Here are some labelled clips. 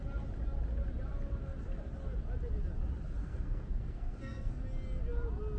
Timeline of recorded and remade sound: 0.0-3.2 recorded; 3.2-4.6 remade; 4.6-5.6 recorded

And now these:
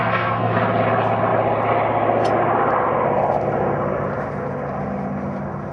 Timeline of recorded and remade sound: 0.0-0.6 remade; 0.6-5.7 recorded

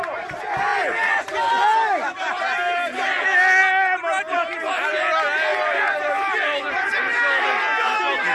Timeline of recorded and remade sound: 0.0-8.3 recorded

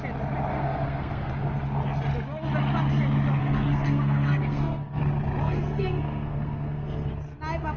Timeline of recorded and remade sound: 0.0-0.5 recorded; 0.5-1.3 remade; 1.3-3.4 recorded; 3.4-5.0 remade; 5.0-5.4 recorded; 5.4-7.1 remade; 7.1-7.8 recorded

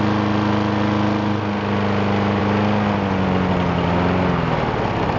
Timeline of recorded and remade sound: 0.0-5.2 recorded